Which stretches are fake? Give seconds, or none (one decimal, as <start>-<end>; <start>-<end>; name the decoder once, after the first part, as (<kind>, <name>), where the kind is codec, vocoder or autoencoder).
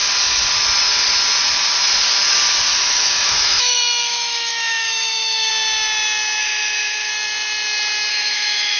2.7-5.5 (autoencoder, DAC-VAE); 6.4-7.1; 8.1-8.8